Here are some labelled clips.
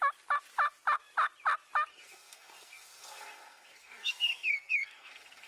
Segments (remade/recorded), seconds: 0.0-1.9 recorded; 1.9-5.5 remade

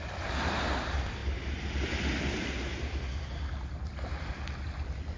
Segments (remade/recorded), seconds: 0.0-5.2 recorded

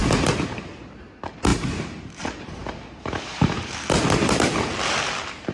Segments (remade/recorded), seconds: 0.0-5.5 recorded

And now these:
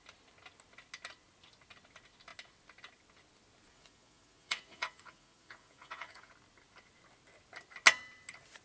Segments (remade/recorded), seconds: 0.0-3.7 recorded; 3.7-6.3 remade; 6.3-8.6 recorded

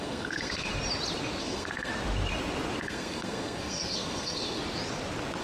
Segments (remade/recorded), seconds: 0.0-0.7 remade; 0.7-1.4 recorded; 1.4-1.9 remade; 1.9-2.8 recorded; 2.8-4.6 remade; 4.6-5.4 recorded

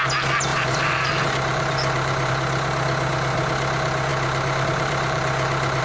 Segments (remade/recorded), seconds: 0.0-0.5 recorded; 0.5-2.3 remade; 2.3-4.1 recorded; 4.1-5.8 remade

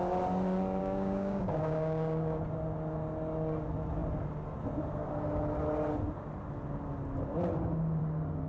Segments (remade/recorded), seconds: 0.0-0.8 recorded; 0.8-2.4 remade; 2.4-8.5 recorded

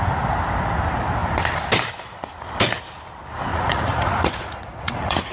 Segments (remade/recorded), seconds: 0.0-3.5 recorded; 3.5-5.3 remade